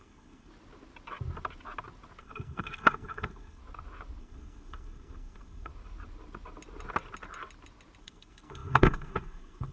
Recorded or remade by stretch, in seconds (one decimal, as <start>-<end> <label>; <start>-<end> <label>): 0.0-0.5 remade; 0.5-2.2 recorded; 2.2-3.6 remade; 3.6-4.2 recorded; 4.2-5.7 remade; 5.7-8.0 recorded; 8.0-9.7 remade